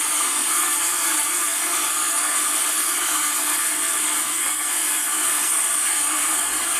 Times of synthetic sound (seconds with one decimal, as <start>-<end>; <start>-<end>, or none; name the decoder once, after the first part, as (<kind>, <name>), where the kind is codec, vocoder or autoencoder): 0.0-6.8 (codec, SNAC)